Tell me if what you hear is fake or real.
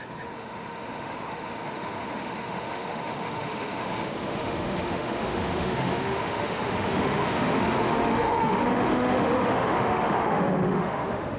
fake